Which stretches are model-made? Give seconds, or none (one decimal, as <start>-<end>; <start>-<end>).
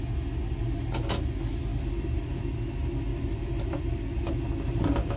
1.7-2.4; 3.1-3.8